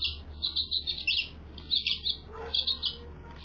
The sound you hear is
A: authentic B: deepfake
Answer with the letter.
A